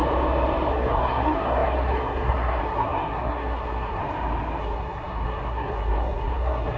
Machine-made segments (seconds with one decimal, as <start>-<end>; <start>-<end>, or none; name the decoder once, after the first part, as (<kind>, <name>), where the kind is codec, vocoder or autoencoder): 0.7-4.0 (codec, SNAC); 4.6-6.8